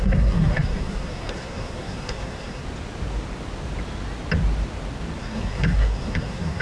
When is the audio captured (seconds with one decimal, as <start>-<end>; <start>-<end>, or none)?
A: 2.6-5.2